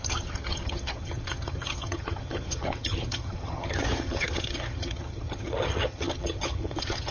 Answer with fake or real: fake